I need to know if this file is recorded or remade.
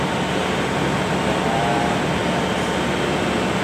recorded